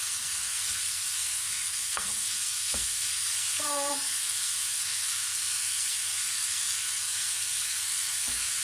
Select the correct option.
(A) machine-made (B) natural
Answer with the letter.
A